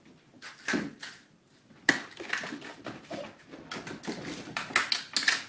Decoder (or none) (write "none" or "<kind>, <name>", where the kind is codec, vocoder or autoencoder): none